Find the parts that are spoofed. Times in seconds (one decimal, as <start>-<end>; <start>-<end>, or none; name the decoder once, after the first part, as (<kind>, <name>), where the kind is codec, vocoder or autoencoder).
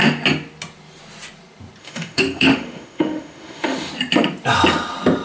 1.8-3.9 (autoencoder, DAC-VAE)